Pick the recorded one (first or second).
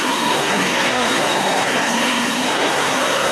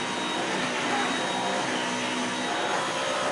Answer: second